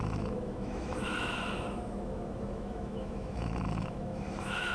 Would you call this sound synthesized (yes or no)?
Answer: yes